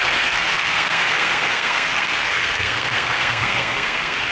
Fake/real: fake